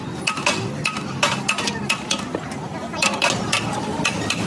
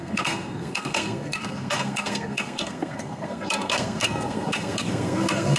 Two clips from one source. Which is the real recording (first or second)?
first